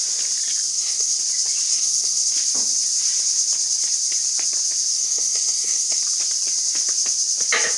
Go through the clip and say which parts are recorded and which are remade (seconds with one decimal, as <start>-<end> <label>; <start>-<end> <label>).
0.0-0.7 recorded; 0.7-1.2 remade; 1.2-1.7 recorded; 1.7-2.3 remade; 2.3-4.9 recorded; 4.9-6.0 remade; 6.0-7.8 recorded